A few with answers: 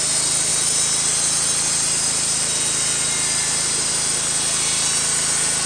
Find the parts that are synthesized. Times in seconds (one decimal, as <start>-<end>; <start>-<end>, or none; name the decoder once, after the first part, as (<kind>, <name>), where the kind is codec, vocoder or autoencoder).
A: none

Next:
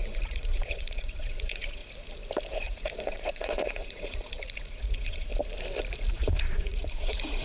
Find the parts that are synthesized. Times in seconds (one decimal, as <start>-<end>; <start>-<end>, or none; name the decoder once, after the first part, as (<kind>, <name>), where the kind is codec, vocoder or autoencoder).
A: 0.0-1.8 (vocoder, Vocos); 2.5-5.3; 6.1-7.4

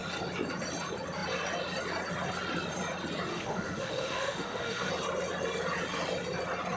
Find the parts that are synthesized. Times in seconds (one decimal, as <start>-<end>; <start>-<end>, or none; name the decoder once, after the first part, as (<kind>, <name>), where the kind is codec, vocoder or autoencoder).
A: 3.3-4.9 (autoencoder, DAC-VAE)

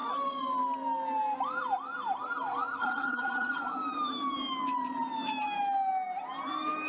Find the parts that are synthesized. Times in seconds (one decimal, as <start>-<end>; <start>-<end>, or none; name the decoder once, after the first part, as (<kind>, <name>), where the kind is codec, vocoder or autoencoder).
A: 2.8-3.6 (vocoder, HiFi-GAN)

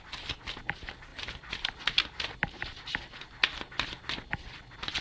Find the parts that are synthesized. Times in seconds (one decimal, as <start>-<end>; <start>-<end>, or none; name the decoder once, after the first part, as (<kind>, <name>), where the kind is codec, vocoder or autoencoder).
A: none

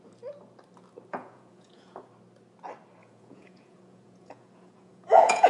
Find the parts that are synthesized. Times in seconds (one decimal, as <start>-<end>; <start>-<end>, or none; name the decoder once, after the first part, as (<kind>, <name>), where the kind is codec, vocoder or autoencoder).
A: 1.1-2.1 (vocoder, Vocos); 3.0-5.5